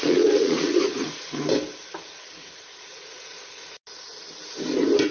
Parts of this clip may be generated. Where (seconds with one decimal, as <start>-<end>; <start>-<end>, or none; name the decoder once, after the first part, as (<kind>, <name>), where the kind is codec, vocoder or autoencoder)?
0.0-1.3 (vocoder, Vocos); 2.4-3.5